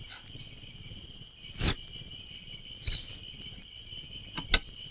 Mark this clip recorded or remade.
recorded